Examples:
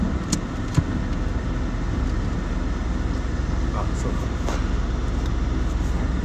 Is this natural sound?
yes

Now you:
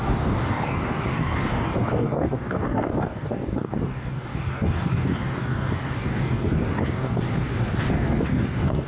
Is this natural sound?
no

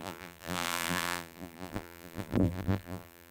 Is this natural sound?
no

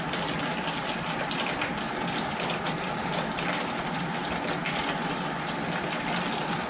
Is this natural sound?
yes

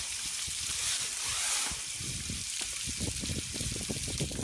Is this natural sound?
yes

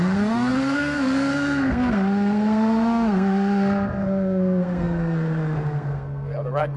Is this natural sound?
no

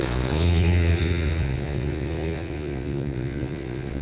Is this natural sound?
no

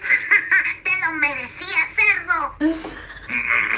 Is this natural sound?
yes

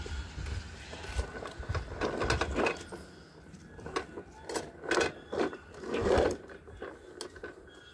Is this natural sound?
yes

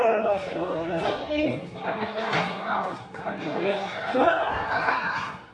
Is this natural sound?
no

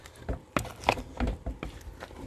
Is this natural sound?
yes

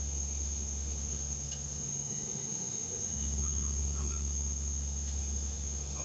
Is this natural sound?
no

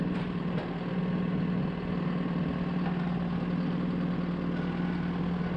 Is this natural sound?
yes